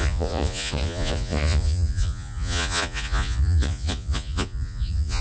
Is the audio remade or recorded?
remade